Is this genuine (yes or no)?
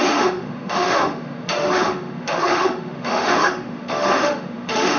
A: no